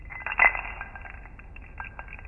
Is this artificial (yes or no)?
no